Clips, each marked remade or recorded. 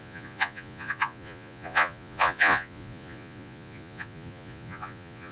remade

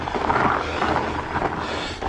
recorded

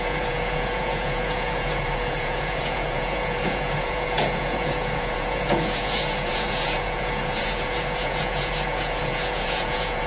remade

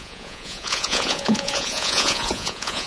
remade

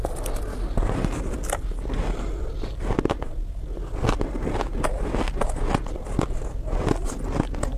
recorded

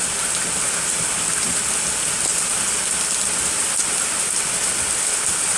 recorded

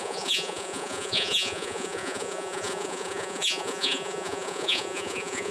remade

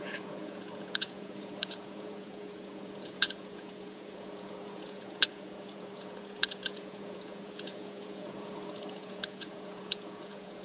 remade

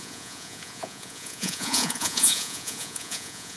remade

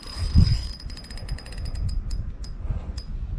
remade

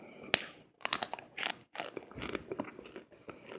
recorded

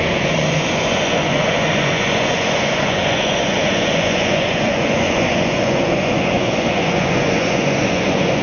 remade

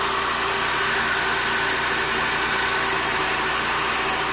recorded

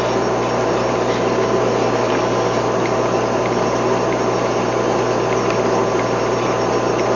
recorded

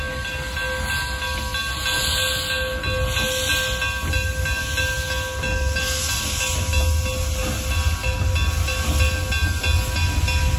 recorded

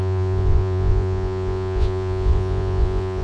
remade